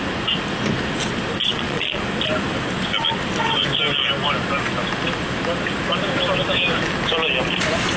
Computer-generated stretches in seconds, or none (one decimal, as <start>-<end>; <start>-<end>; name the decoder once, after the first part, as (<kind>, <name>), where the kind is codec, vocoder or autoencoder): 1.5-2.0 (vocoder, Vocos)